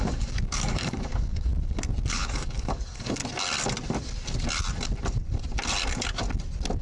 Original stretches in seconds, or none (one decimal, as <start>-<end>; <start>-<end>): 1.5-2.1; 3.2-6.8